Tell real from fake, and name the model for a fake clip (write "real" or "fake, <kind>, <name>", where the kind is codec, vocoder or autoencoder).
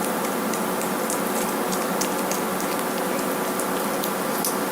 real